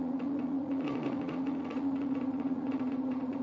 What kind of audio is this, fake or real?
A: fake